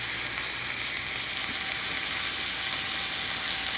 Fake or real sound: real